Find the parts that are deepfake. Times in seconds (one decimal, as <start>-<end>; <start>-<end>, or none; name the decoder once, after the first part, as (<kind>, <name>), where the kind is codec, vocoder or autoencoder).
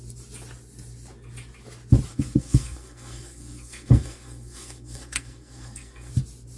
2.1-6.1 (codec, SNAC)